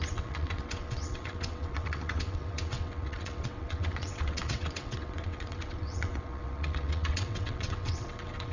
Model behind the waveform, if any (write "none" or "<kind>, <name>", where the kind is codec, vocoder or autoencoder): vocoder, WaveNeXt